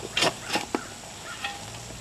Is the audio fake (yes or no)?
no